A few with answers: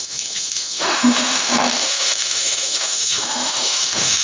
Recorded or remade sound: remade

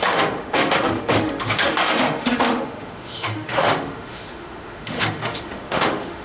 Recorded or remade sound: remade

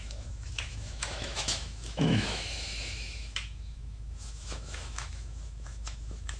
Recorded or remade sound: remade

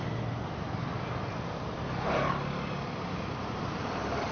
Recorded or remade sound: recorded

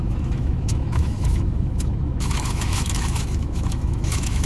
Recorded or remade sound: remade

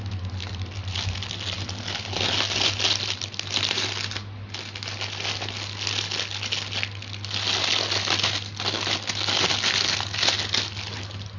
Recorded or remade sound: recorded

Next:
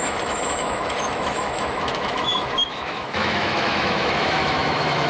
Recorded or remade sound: remade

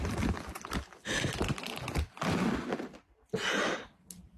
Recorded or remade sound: recorded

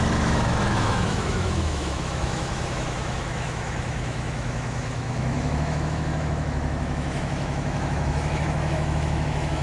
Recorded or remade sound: remade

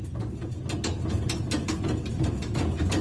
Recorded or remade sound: recorded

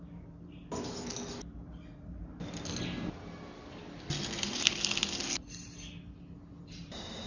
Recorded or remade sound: recorded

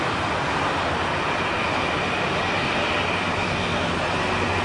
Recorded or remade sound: recorded